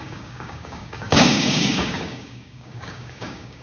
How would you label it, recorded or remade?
remade